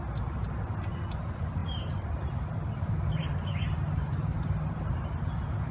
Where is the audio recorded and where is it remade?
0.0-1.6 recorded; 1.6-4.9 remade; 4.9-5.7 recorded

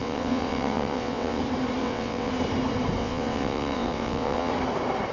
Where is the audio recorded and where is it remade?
0.0-1.4 remade; 1.4-1.8 recorded; 1.8-2.3 remade; 2.3-3.0 recorded; 3.0-4.5 remade; 4.5-5.1 recorded

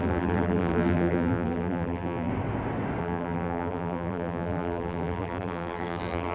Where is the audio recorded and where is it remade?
0.0-2.3 remade; 2.3-3.0 recorded; 3.0-6.3 remade

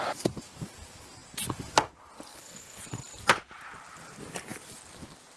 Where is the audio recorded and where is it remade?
0.0-2.3 recorded; 2.3-2.8 remade; 2.8-5.4 recorded

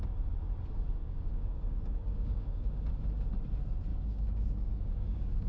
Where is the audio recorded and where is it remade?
0.0-1.0 recorded; 1.0-2.9 remade; 2.9-3.9 recorded; 3.9-5.5 remade

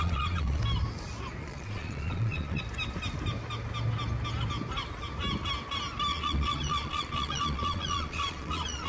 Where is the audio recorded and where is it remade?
0.0-0.6 remade; 0.6-1.4 recorded; 1.4-2.6 remade; 2.6-6.1 recorded; 6.1-8.9 remade